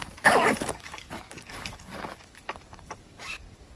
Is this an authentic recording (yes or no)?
no